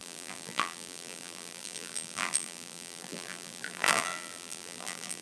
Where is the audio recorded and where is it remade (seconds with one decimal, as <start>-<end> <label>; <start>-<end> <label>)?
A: 0.0-5.2 remade

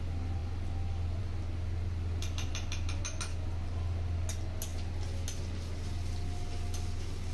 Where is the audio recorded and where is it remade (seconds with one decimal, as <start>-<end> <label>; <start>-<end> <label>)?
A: 0.0-7.3 recorded

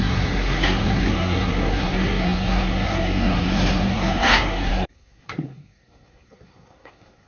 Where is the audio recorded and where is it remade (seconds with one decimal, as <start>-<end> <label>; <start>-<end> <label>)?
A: 0.0-7.3 remade